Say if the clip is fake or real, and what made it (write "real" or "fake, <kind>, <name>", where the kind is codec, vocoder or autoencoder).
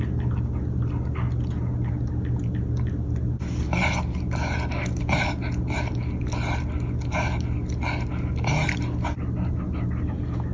real